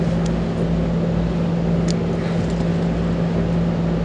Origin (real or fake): real